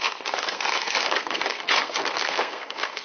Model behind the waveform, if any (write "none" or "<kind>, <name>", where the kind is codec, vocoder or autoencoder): codec, SNAC